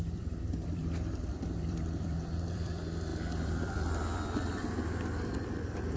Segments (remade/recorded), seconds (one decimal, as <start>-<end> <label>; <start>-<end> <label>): 0.0-6.0 remade